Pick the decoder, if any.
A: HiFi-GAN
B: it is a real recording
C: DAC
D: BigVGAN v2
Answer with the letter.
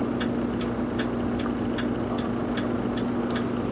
B